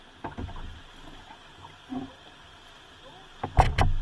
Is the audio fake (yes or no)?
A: no